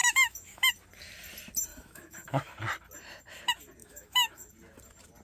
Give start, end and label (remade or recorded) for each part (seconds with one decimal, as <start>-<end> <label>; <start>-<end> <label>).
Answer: 0.0-0.7 remade; 0.7-1.7 recorded; 1.7-2.5 remade; 2.5-3.8 recorded; 3.8-4.5 remade; 4.5-5.2 recorded